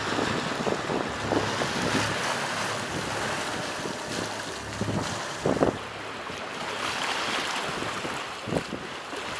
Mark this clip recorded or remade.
recorded